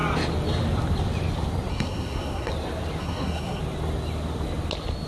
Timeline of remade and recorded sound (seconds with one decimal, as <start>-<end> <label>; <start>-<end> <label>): 0.0-1.7 recorded; 1.7-2.5 remade; 2.5-3.0 recorded; 3.0-3.6 remade; 3.6-5.1 recorded